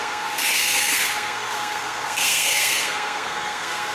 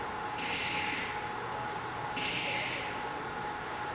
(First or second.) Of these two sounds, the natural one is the second